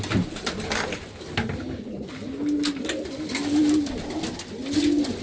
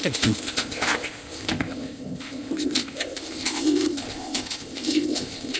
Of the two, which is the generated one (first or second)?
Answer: second